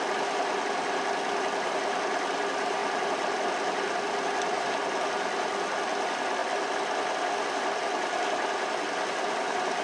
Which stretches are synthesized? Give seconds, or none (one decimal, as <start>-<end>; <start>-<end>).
none

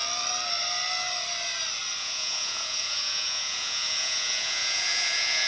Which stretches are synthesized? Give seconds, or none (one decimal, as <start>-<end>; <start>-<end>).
2.0-5.5

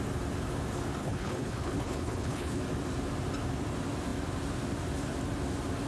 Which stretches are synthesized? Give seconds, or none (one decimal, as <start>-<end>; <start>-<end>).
1.0-2.6

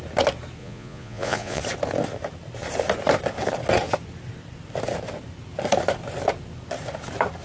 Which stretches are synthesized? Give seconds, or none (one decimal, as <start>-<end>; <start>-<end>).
0.6-1.6